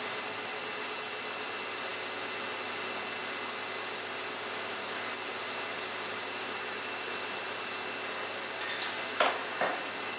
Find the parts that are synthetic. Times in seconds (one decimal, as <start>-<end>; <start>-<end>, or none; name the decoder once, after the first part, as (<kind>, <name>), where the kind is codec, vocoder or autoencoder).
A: none